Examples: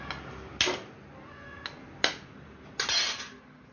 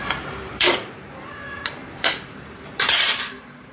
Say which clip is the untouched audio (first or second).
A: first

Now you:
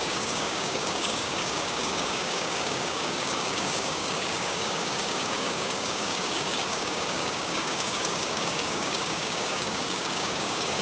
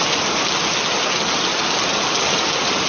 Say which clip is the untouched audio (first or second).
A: second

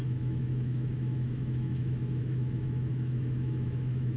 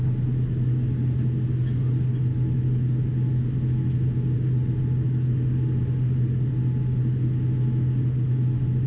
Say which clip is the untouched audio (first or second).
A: second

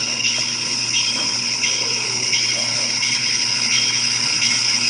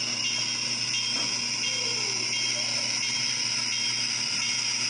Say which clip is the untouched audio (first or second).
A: second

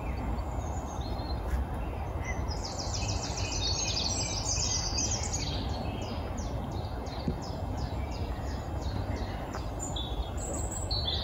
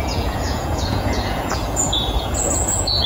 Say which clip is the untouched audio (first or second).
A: first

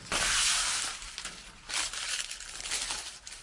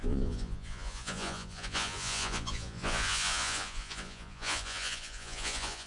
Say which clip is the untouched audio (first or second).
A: first